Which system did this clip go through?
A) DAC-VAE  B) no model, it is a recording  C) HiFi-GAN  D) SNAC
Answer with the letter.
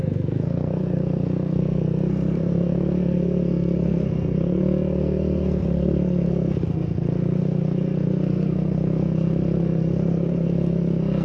D